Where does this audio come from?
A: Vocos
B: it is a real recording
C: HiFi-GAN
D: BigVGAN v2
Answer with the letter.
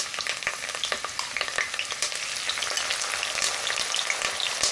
B